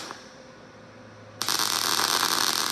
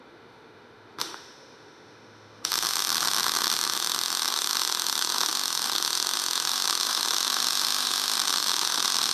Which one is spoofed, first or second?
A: second